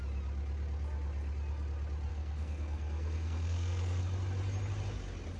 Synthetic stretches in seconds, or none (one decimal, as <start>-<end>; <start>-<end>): 2.1-4.0